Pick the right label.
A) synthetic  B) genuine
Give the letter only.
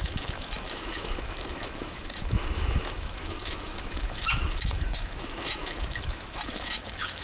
A